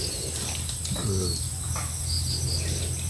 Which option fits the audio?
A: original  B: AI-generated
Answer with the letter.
A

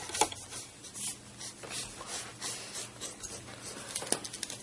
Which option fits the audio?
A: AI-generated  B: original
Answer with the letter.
B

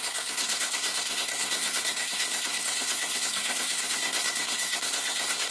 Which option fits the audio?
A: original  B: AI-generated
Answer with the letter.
B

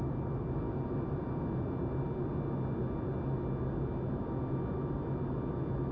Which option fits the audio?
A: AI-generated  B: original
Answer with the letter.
B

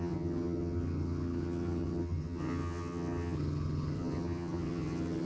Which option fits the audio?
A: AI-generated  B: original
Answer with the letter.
A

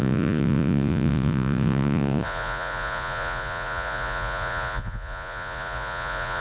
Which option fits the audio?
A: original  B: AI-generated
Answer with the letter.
B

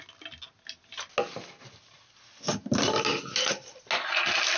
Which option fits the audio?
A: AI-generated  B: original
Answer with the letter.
B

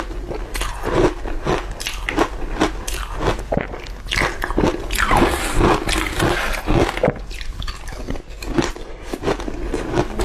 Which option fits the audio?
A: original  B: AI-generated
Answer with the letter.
A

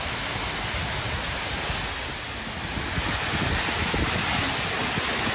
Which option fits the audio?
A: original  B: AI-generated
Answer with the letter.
A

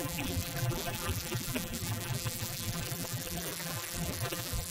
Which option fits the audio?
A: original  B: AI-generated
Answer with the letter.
B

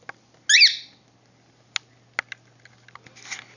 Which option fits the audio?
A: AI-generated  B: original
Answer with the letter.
B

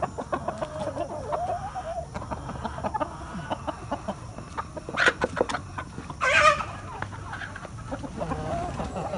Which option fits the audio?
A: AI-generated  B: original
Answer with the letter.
B